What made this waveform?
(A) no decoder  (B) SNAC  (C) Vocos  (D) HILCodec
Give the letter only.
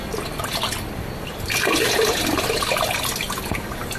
A